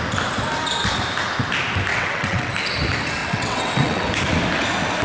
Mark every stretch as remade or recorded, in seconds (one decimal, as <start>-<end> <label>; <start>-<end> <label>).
0.0-1.9 recorded; 1.9-2.5 remade; 2.5-3.2 recorded; 3.2-4.0 remade; 4.0-5.0 recorded